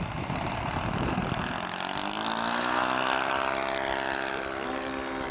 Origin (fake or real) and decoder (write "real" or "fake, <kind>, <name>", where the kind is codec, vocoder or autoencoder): real